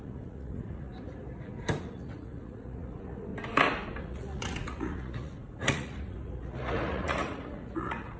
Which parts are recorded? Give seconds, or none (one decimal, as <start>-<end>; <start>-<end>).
0.9-1.8; 3.3-4.0